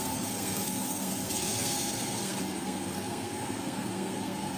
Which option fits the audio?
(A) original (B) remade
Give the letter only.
B